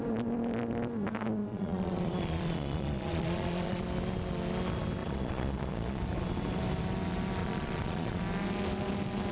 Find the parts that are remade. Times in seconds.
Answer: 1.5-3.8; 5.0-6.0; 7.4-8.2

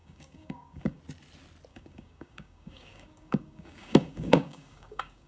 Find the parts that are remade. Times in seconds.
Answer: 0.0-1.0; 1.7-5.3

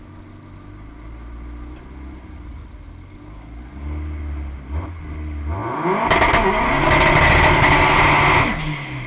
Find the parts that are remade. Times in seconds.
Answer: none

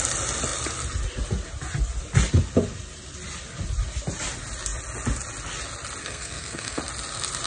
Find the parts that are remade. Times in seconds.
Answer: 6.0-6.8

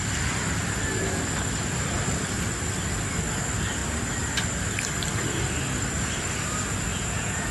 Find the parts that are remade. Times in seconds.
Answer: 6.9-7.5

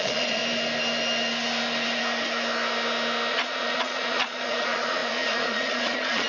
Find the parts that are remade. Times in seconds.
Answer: 0.0-0.4; 3.3-6.3